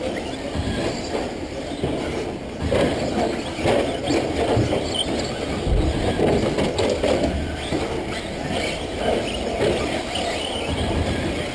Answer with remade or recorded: recorded